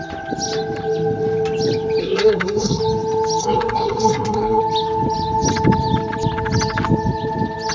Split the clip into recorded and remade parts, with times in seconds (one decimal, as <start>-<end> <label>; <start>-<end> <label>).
0.0-2.0 recorded; 2.0-2.8 remade; 2.8-3.4 recorded; 3.4-4.6 remade; 4.6-7.7 recorded